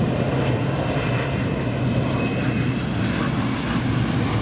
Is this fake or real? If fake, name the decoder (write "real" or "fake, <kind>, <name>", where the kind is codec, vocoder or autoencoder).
real